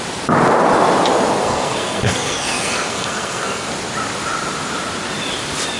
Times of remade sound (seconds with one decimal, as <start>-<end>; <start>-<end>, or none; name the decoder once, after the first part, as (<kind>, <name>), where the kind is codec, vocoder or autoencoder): 1.4-3.7 (codec, SNAC)